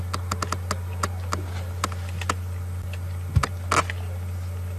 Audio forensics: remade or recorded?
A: recorded